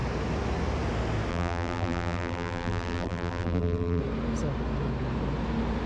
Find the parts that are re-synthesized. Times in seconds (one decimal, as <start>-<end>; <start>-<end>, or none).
1.3-4.0